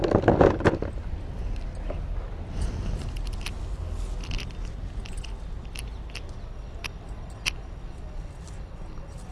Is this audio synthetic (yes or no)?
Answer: no